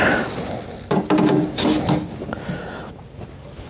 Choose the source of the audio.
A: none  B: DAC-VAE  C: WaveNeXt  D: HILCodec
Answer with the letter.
A